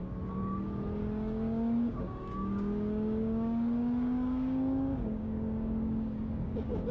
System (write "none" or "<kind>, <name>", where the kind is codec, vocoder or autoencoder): codec, DAC